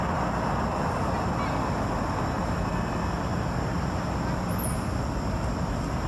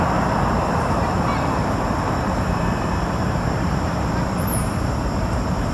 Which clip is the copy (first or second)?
second